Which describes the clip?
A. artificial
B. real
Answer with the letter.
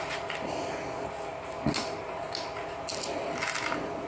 B